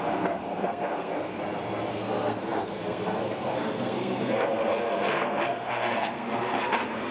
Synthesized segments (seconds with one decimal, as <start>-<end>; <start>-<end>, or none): 0.0-1.4; 1.9-7.1